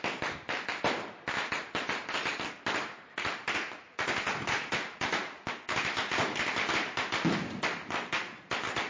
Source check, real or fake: real